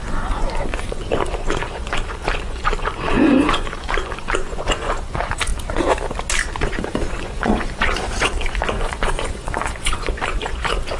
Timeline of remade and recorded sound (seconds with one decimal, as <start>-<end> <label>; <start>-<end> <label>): 0.0-5.5 remade; 5.5-6.6 recorded; 6.6-11.0 remade

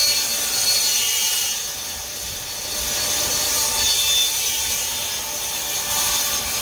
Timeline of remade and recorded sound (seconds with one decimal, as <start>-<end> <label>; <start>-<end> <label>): 0.0-6.6 recorded